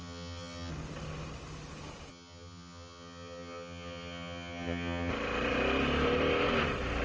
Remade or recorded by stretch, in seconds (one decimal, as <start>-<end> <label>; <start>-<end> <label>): 0.0-0.7 remade; 0.7-2.1 recorded; 2.1-5.1 remade; 5.1-7.0 recorded